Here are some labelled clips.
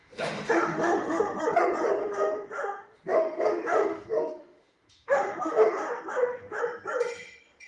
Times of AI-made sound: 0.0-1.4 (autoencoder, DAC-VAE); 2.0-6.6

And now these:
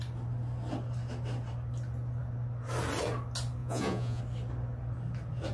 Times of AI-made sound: 3.6-4.2 (vocoder, Vocos)

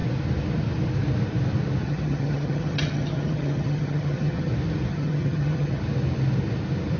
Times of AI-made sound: 1.8-4.5 (vocoder, HiFi-GAN); 4.9-5.8